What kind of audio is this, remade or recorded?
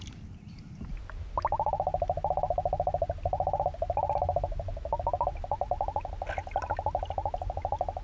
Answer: recorded